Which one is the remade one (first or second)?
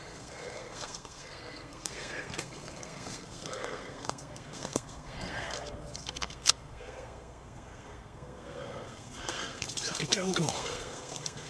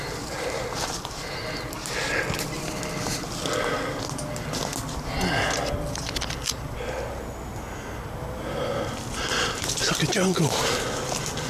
first